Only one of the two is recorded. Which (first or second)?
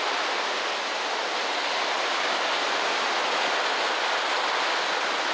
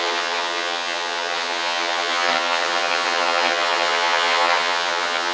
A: first